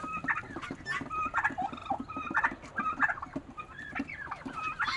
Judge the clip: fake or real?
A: real